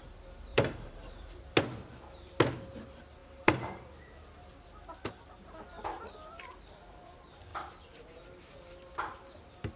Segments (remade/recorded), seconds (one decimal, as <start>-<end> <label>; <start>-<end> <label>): 0.0-0.5 recorded; 0.5-1.4 remade; 1.4-3.2 recorded; 3.2-3.8 remade; 3.8-9.8 recorded